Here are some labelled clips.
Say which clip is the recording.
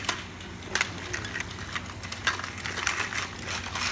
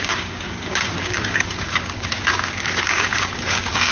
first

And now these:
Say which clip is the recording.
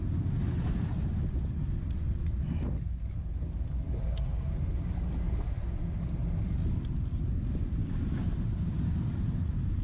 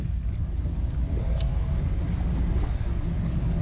first